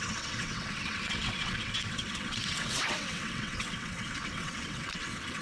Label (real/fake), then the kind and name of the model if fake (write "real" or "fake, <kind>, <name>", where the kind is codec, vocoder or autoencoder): fake, vocoder, WaveNeXt